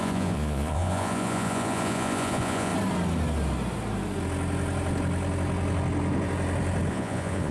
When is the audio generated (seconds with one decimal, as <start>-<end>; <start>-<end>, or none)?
0.0-2.7; 6.9-7.5